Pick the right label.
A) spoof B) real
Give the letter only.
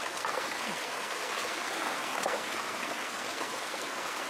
A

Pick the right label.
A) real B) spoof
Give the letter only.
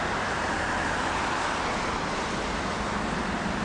A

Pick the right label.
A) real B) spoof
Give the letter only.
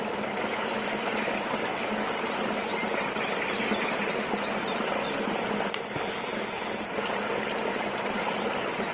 A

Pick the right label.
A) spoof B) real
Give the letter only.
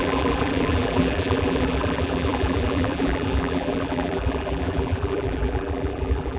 A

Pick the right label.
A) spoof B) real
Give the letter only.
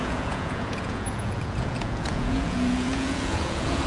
A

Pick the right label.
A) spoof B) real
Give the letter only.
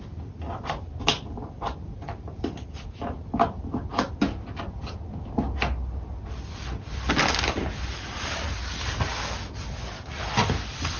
B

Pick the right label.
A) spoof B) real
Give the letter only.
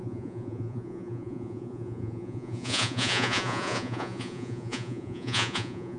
A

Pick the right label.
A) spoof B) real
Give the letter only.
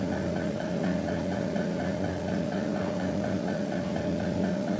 A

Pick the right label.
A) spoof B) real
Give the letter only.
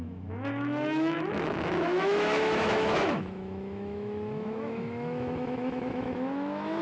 A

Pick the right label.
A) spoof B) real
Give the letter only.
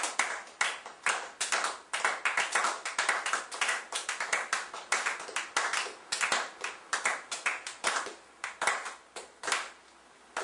B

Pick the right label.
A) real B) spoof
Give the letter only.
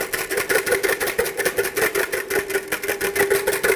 A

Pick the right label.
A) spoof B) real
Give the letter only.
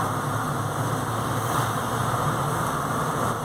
A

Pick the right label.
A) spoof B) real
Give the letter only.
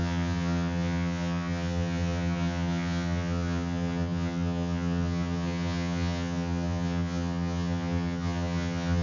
A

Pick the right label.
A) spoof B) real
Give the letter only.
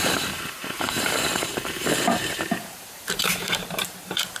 A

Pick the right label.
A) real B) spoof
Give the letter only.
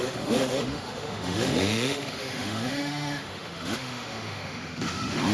B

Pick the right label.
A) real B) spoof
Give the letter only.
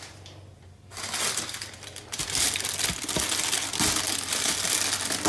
A